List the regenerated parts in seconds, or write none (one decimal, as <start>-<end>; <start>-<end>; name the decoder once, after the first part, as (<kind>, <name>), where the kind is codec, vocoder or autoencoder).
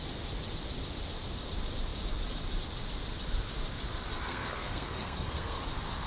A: 4.3-5.6 (codec, SNAC)